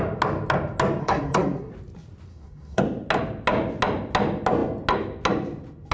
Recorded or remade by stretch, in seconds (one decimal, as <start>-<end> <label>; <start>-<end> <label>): 0.0-1.0 recorded; 1.0-1.7 remade; 1.7-2.3 recorded; 2.3-2.8 remade; 2.8-5.9 recorded